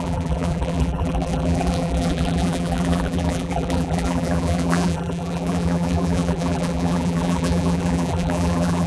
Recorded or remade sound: remade